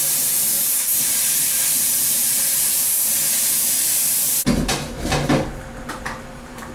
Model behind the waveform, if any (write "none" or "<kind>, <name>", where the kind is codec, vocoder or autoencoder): vocoder, BigVGAN v2